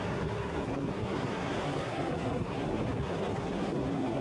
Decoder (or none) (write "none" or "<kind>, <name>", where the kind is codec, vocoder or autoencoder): codec, SNAC